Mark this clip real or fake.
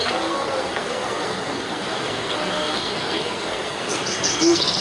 fake